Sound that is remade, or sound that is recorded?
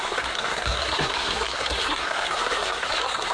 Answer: remade